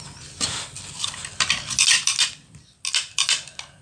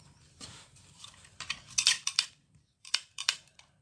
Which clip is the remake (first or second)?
second